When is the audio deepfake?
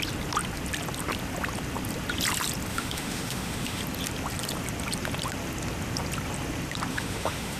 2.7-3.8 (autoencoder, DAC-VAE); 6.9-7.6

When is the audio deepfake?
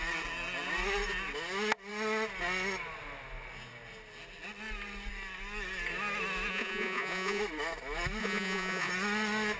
6.5-7.4 (vocoder, Vocos); 8.2-8.9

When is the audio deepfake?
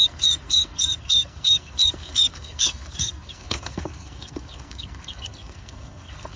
0.0-6.4 (codec, SNAC)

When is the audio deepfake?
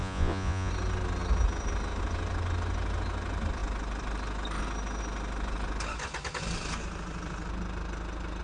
0.0-0.7 (vocoder, Vocos)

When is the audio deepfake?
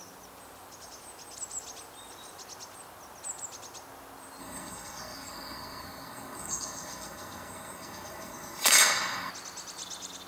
4.4-9.3 (codec, SNAC)